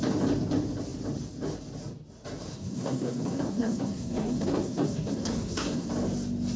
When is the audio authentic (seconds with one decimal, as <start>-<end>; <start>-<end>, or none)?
0.0-2.5; 5.9-6.6